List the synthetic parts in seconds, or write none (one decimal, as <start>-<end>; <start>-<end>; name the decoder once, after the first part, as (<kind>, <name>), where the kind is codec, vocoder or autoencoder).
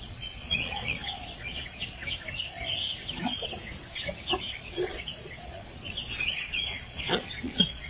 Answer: 0.0-2.0 (vocoder, Vocos); 4.4-7.9